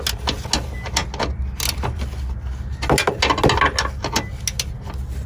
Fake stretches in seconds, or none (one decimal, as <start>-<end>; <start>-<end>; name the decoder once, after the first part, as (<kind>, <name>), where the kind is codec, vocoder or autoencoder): none